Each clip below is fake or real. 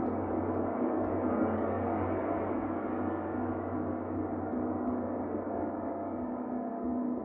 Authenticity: fake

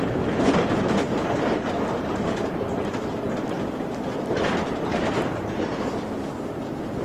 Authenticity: fake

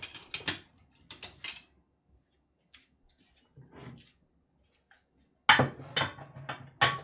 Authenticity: real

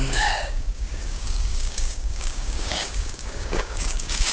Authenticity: fake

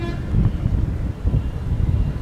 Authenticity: real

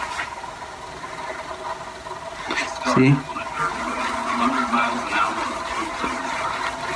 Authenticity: real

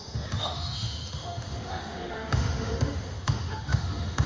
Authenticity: fake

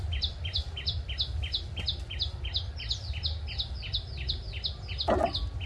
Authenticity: real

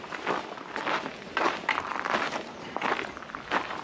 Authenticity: real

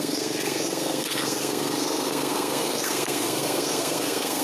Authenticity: fake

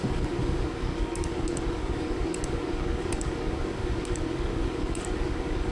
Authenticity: fake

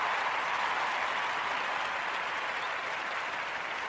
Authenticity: real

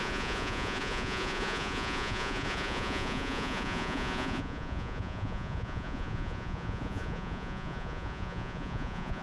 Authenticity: fake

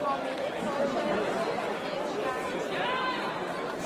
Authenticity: real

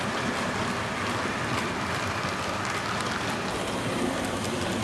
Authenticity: real